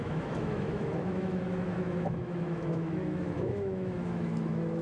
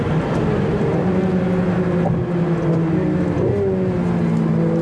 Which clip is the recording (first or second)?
second